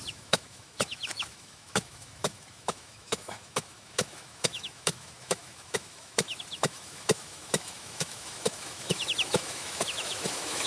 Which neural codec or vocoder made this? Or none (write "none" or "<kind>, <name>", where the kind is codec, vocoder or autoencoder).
autoencoder, DAC-VAE